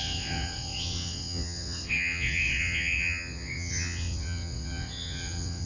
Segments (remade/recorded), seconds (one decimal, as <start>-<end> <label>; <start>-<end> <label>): 0.0-5.7 remade